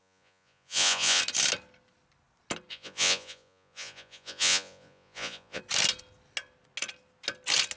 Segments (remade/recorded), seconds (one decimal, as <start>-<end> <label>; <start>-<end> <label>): 0.0-1.2 remade; 1.2-2.7 recorded; 2.7-5.6 remade; 5.6-7.8 recorded

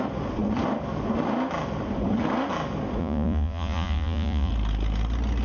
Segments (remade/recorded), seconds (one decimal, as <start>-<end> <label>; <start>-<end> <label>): 0.0-3.0 recorded; 3.0-4.5 remade; 4.5-5.4 recorded